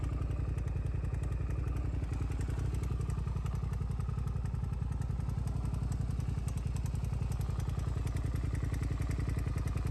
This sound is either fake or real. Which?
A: real